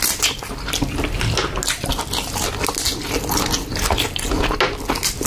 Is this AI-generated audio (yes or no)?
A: no